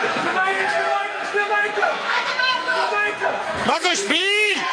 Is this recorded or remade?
remade